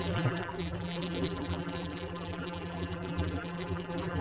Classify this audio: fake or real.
fake